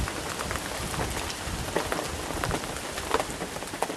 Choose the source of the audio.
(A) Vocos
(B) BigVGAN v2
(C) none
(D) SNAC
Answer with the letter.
C